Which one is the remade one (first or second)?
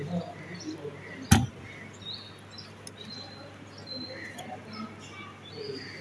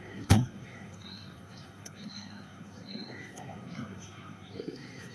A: second